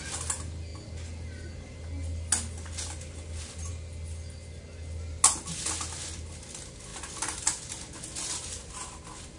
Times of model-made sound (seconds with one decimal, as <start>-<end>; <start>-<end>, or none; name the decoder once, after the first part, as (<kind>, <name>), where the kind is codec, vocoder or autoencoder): none